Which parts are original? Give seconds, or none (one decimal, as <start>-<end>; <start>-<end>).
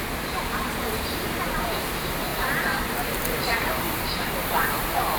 none